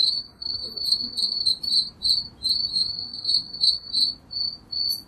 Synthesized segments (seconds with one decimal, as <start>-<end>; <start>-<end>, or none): 0.0-1.5; 2.7-3.9